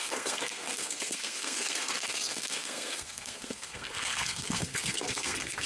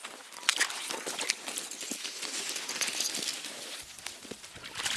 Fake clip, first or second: first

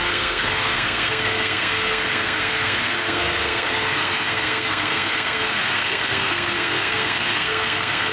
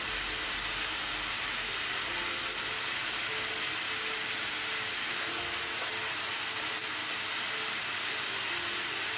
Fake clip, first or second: first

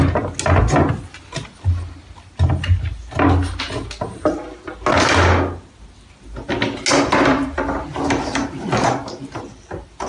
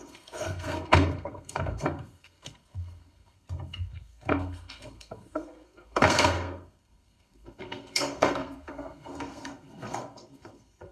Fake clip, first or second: second